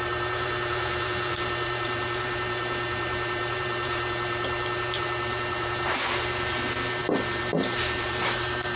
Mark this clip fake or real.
fake